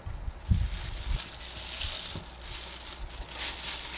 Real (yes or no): yes